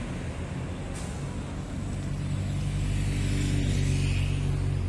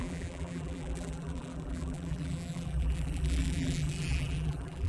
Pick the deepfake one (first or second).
second